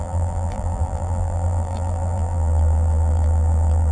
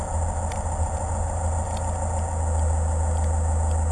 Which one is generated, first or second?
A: first